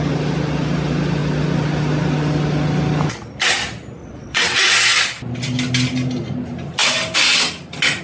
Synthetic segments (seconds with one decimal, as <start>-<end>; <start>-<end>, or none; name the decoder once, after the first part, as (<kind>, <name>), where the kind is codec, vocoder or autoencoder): 4.0-4.7 (vocoder, WaveNeXt)